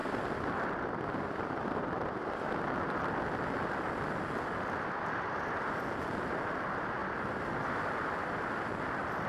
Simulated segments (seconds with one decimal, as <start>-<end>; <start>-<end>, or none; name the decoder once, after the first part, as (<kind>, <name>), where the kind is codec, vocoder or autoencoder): 0.0-3.9 (vocoder, BigVGAN v2); 7.0-7.5